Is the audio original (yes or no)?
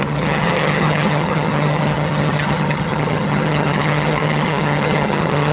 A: no